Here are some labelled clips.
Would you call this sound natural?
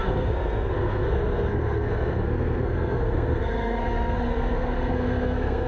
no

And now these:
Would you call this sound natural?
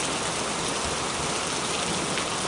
yes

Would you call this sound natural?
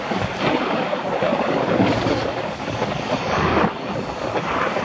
no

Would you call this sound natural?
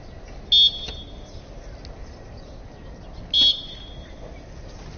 yes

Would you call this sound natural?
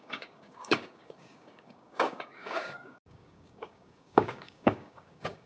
no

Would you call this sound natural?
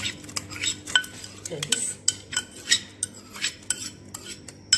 yes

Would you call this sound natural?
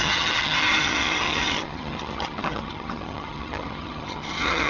no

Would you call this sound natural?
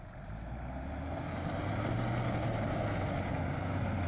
yes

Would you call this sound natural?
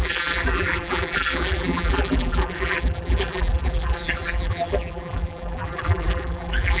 no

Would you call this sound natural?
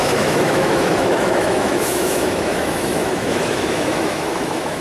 no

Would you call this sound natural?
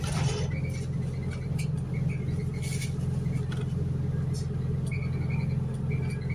yes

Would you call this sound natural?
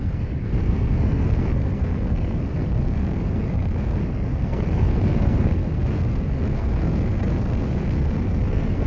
no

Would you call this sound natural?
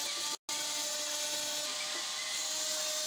yes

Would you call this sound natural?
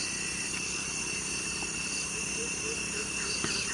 yes